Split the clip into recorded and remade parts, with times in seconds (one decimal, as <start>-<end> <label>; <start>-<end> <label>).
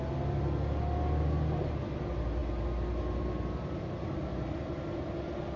0.0-5.6 recorded